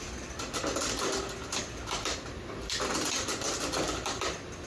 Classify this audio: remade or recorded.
recorded